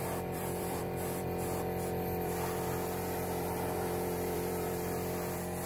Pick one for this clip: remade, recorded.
remade